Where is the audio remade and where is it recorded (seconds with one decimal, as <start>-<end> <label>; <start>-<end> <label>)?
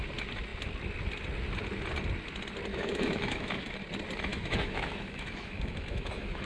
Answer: 0.0-2.7 recorded; 2.7-3.7 remade; 3.7-4.3 recorded; 4.3-6.5 remade